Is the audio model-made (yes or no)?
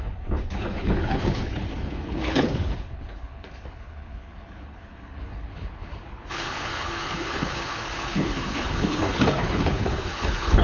yes